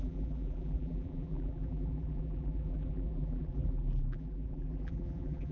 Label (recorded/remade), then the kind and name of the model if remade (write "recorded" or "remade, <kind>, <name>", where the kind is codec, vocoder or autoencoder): remade, vocoder, BigVGAN v2